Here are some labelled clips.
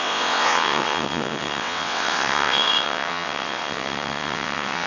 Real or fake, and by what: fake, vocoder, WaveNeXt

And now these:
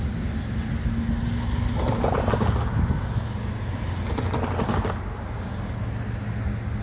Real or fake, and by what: real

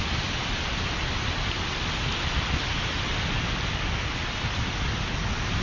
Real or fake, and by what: real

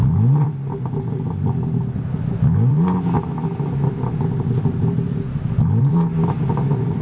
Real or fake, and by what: fake, vocoder, BigVGAN v2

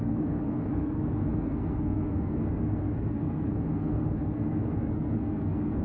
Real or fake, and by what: fake, codec, SNAC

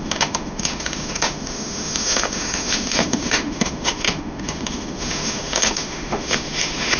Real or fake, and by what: fake, autoencoder, DAC-VAE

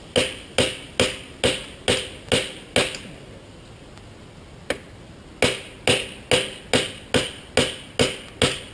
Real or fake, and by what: real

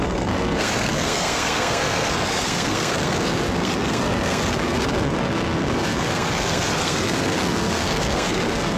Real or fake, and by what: fake, codec, SNAC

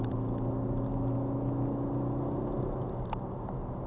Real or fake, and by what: real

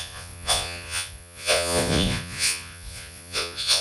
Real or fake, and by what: fake, vocoder, Vocos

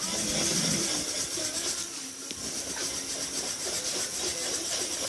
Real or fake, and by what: real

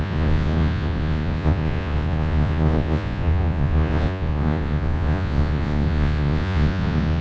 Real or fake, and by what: fake, vocoder, Vocos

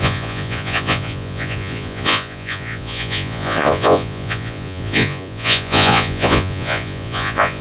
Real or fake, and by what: fake, vocoder, Vocos